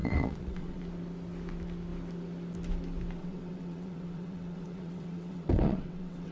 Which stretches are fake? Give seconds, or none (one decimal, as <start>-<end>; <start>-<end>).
0.0-0.8; 3.2-6.3